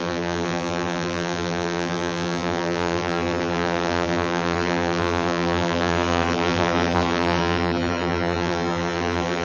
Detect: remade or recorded remade